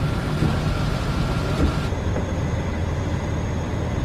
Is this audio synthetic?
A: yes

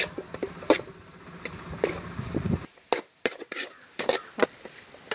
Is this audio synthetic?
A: no